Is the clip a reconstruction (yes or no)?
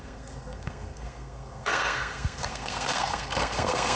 yes